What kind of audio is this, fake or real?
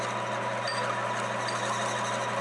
real